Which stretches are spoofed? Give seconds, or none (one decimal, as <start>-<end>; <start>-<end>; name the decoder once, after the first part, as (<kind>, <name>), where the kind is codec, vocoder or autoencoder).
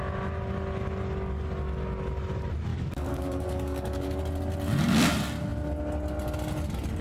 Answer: 2.7-4.2 (codec, DAC)